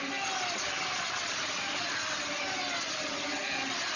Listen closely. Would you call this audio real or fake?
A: real